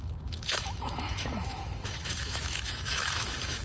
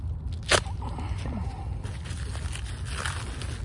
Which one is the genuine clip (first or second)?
second